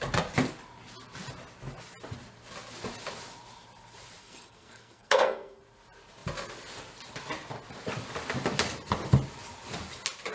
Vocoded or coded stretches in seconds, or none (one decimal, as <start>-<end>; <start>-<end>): 4.2-5.6